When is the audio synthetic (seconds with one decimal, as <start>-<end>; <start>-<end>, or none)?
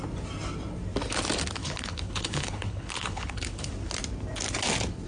1.6-3.7